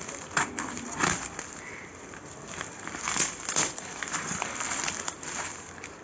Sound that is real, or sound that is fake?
fake